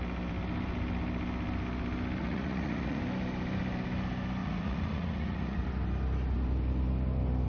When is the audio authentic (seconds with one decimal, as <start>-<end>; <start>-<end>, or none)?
0.0-2.2; 3.0-4.4; 5.7-7.5